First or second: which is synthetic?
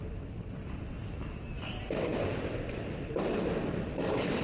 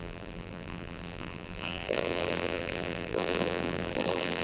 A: second